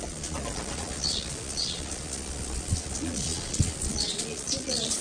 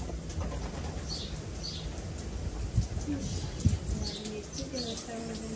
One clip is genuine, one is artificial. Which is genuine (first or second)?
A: second